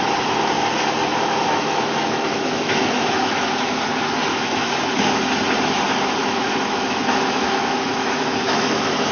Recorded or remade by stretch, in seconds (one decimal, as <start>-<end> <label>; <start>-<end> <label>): 0.0-1.1 recorded; 1.1-3.8 remade; 3.8-4.3 recorded; 4.3-5.1 remade; 5.1-6.2 recorded; 6.2-9.1 remade